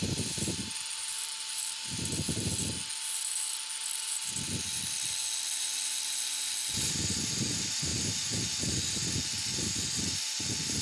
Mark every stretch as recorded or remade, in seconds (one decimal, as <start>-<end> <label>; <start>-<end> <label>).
0.0-1.0 recorded; 1.0-2.1 remade; 2.1-10.8 recorded